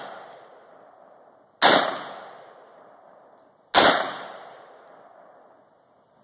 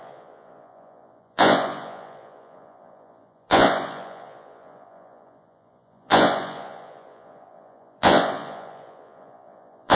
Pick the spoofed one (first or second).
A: second